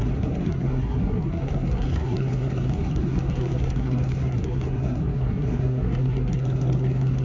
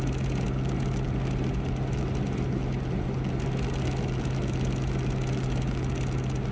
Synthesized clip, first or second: first